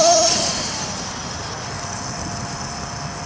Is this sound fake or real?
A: real